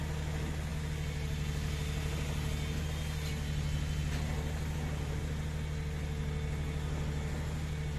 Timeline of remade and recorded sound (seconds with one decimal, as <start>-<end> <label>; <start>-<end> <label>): 0.0-8.0 recorded